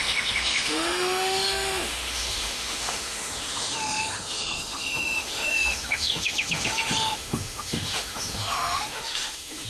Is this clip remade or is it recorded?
remade